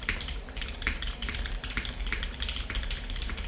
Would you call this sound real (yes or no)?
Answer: no